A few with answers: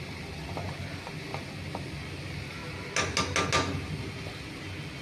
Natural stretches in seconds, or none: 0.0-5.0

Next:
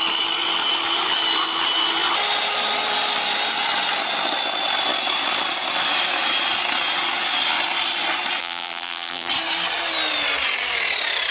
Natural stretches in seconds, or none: 0.0-8.4; 9.3-11.3

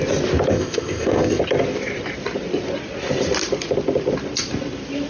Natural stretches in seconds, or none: 0.0-0.5; 1.4-5.1

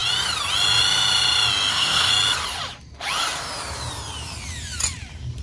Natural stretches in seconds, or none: 0.0-1.7; 2.1-5.4

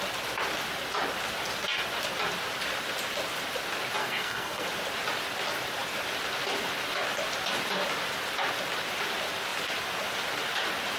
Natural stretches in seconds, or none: 0.0-4.0; 4.7-11.0